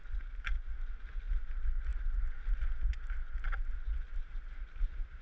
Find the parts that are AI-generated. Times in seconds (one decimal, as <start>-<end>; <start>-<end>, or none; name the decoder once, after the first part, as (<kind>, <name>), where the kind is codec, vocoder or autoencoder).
none